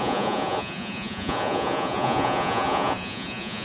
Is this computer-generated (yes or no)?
yes